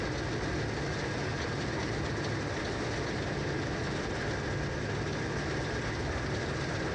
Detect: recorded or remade recorded